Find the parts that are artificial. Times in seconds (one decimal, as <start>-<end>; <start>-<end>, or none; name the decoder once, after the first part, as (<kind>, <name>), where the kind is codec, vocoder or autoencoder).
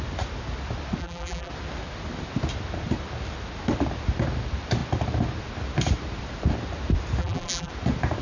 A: 1.0-1.5 (vocoder, BigVGAN v2); 7.2-7.7